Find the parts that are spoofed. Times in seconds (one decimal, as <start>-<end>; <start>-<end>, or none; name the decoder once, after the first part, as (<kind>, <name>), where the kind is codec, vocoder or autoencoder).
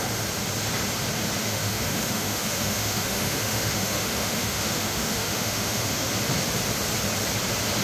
1.4-6.1 (autoencoder, DAC-VAE)